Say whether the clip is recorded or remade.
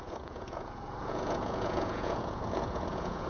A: remade